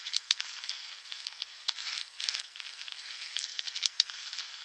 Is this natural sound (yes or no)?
no